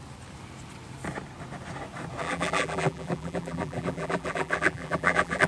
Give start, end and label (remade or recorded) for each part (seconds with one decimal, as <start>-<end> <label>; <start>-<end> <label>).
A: 0.0-2.2 recorded; 2.2-5.5 remade